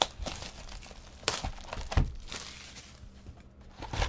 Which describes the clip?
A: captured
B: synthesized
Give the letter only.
A